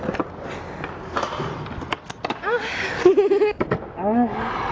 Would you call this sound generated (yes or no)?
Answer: no